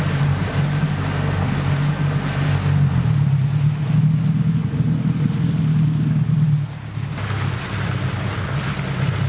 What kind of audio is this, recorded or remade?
recorded